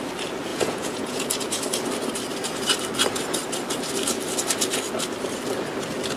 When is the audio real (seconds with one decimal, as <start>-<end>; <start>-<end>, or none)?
0.0-0.5; 1.2-6.2